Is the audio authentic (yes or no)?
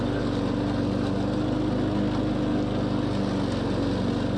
yes